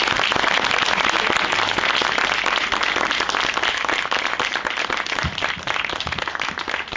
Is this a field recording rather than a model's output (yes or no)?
yes